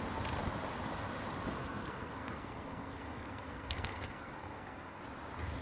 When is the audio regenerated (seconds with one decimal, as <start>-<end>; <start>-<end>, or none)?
1.6-5.0